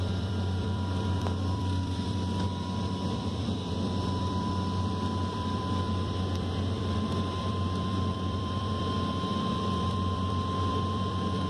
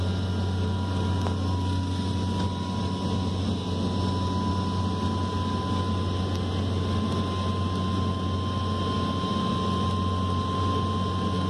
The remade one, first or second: first